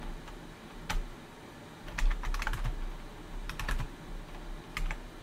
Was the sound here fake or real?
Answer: real